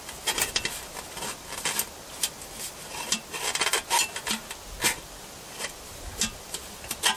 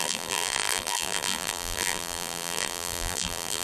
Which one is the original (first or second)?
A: first